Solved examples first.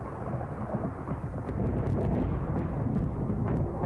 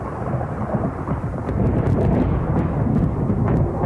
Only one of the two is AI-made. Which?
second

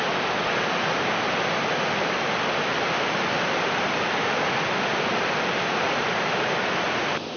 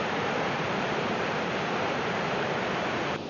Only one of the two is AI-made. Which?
second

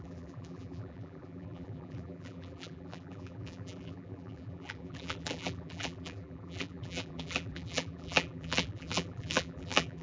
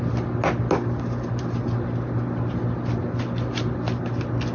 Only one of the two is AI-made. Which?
first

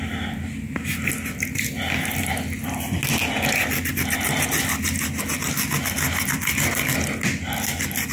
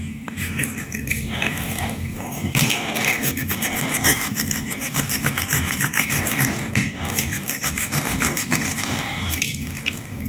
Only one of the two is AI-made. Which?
second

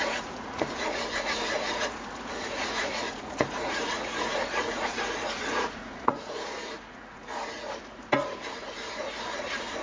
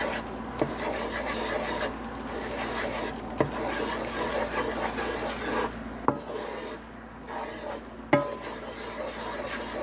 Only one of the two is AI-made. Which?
first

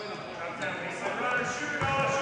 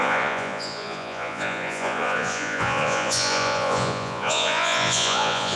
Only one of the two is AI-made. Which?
second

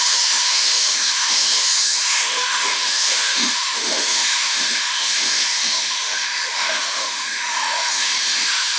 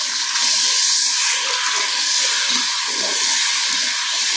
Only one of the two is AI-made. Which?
first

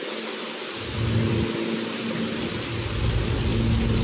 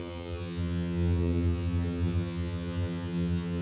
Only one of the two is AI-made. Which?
second